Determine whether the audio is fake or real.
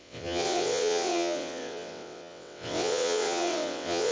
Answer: fake